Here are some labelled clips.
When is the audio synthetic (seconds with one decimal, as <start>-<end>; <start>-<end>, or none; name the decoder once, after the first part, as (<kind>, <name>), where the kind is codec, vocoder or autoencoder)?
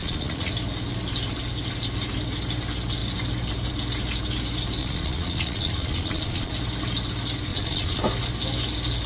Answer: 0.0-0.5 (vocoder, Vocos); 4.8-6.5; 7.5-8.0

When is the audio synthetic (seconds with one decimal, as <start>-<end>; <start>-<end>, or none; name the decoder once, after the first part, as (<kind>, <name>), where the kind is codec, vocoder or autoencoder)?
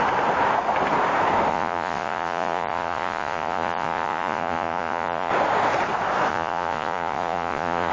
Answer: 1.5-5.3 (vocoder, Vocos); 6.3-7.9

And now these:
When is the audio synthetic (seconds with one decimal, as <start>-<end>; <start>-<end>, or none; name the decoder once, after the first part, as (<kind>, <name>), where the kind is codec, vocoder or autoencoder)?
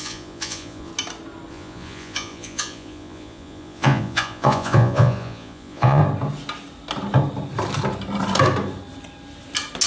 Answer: 0.0-0.9 (vocoder, Vocos); 1.5-6.0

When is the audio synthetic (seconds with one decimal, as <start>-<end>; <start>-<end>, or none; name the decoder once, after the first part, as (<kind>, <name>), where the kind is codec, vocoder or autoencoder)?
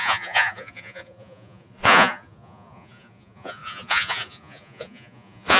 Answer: 0.0-5.6 (vocoder, Vocos)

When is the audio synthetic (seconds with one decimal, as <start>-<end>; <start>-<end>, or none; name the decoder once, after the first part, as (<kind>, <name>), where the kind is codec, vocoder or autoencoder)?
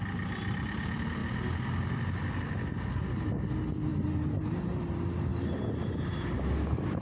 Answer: none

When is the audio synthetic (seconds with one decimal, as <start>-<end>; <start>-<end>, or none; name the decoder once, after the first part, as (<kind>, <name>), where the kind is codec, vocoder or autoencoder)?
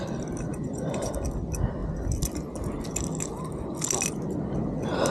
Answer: 0.5-1.1 (vocoder, Vocos)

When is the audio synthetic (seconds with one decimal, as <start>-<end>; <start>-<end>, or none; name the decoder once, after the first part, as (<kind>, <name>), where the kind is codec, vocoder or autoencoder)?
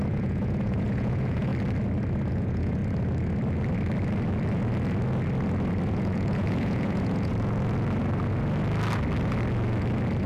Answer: 0.0-1.5 (vocoder, Vocos); 2.3-2.8; 5.9-7.3